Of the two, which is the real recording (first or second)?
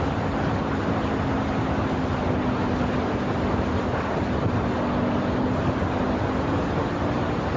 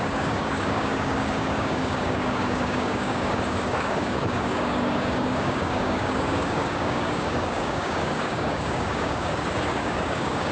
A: first